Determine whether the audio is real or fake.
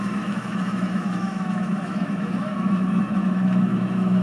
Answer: fake